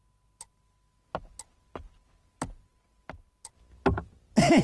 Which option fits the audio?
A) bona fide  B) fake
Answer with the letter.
A